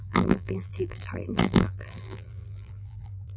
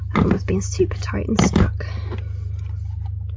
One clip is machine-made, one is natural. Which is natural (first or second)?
second